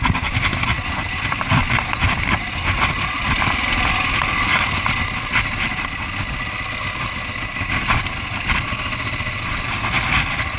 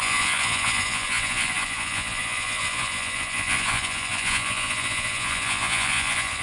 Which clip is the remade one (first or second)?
second